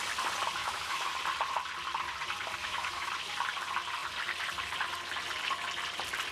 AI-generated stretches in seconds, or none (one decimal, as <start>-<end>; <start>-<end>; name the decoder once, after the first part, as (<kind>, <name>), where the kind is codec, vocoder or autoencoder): 0.6-1.1 (autoencoder, DAC-VAE); 2.6-3.1